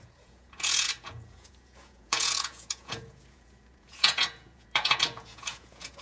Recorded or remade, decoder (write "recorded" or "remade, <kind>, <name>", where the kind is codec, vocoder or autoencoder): remade, vocoder, Vocos